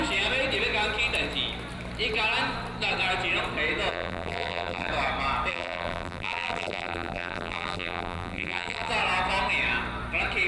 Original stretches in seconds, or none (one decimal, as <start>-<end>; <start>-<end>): 0.0-3.9; 4.9-5.5; 8.9-10.5